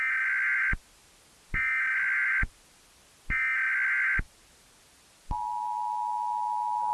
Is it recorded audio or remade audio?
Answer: recorded